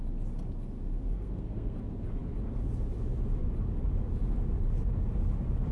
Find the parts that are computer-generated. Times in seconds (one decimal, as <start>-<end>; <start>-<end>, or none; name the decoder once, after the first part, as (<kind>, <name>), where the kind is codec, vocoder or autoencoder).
1.1-1.8 (codec, SNAC)